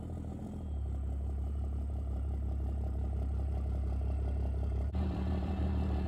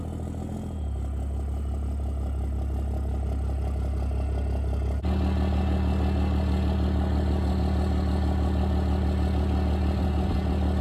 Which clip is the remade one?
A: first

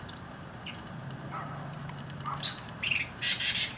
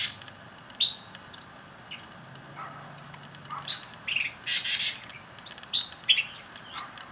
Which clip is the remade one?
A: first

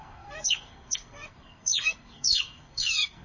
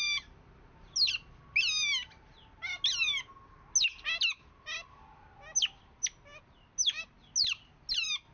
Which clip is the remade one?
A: first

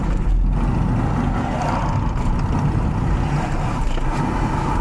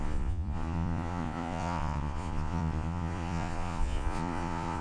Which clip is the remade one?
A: second